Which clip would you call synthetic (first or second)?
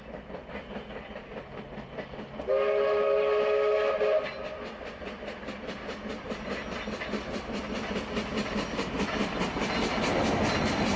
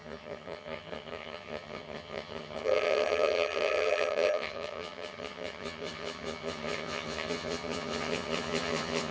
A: second